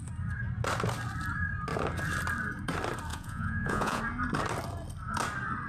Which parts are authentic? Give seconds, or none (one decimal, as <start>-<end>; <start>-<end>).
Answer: 0.0-3.1; 4.0-5.7